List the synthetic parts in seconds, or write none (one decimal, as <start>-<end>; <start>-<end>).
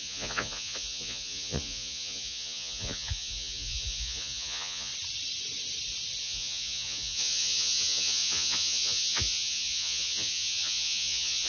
0.0-4.9; 6.2-11.5